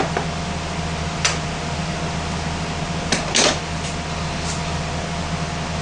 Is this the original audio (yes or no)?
yes